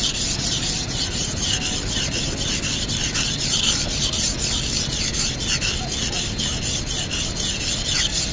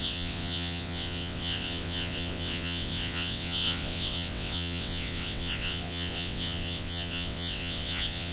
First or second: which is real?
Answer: first